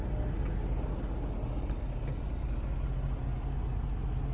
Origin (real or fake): real